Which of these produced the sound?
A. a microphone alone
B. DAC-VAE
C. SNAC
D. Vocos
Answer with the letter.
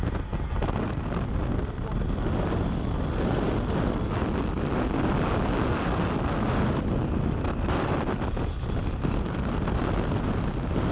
A